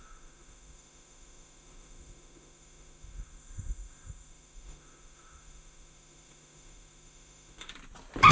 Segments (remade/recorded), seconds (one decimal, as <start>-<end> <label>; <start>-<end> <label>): 0.0-7.7 remade; 7.7-8.3 recorded